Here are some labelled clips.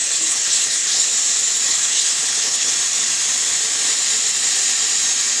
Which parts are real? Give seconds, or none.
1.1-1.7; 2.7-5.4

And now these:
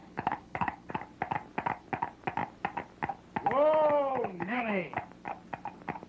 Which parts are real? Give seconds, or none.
0.9-4.1; 4.9-6.1

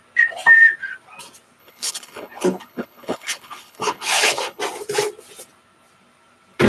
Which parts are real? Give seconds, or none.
0.0-1.6; 4.6-6.7

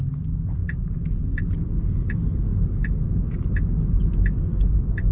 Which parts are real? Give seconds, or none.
0.0-5.1

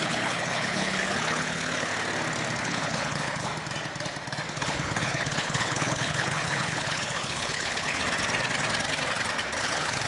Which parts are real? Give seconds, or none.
1.9-2.6; 3.5-4.5; 8.0-9.6